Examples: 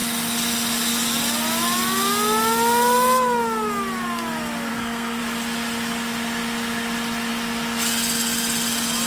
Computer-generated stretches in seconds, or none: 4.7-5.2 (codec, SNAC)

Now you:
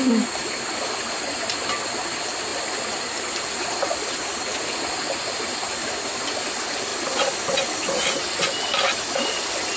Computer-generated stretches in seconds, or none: none

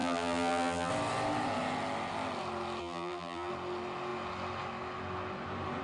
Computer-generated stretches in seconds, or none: 0.0-0.9 (vocoder, BigVGAN v2); 2.8-3.5

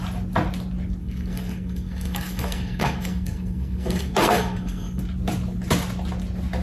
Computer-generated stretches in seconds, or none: 1.0-5.0 (codec, SNAC)

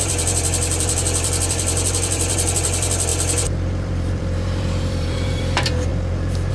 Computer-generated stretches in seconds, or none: 0.0-6.5 (vocoder, BigVGAN v2)

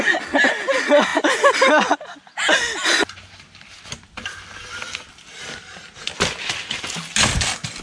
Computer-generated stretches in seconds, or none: none